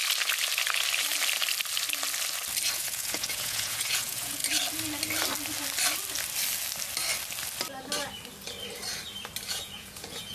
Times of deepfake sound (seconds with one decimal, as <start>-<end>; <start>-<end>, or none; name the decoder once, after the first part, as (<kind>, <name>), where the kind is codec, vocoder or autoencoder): 2.7-4.4 (vocoder, Vocos); 9.5-10.3

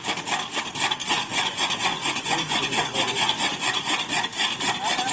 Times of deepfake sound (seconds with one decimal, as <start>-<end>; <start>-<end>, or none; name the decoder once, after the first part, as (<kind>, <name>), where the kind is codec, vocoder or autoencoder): 1.0-4.1 (vocoder, Vocos)

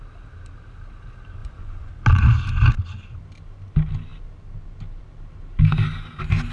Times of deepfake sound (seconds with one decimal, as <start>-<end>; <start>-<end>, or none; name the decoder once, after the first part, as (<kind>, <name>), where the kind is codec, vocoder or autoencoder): 1.4-1.9 (vocoder, Vocos)

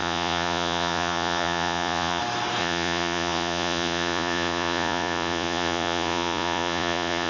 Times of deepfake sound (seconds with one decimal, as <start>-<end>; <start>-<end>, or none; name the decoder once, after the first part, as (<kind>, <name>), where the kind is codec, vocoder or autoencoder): 0.0-2.2 (vocoder, Vocos); 2.6-7.3

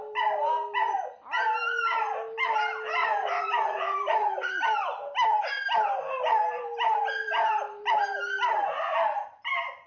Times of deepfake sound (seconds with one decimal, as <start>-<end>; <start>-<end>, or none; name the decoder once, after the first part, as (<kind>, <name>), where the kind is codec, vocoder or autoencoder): 3.0-4.5 (vocoder, Vocos)